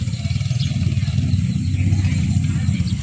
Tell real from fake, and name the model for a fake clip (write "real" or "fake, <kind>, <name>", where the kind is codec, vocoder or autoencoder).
real